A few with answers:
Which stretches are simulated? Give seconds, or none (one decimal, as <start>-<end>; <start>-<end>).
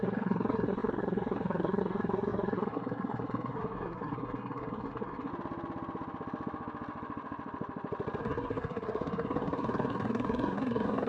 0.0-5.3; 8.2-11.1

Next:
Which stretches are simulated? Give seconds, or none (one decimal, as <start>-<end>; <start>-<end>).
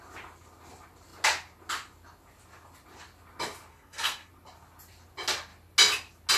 3.7-4.3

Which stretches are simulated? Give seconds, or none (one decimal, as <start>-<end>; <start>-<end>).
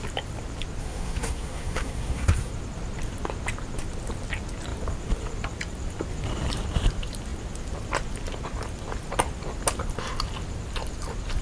0.8-2.5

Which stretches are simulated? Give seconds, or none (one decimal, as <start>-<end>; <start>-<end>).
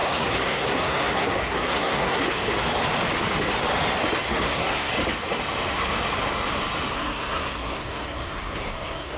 0.0-2.3; 4.3-4.9; 6.9-9.2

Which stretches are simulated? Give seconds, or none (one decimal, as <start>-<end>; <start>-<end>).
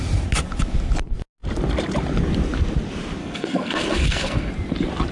3.2-4.5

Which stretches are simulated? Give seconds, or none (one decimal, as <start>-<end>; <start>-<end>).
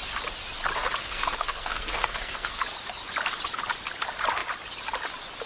1.0-2.6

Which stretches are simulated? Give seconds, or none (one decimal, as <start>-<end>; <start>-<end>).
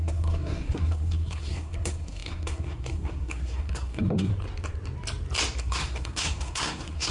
0.0-4.3; 5.6-7.1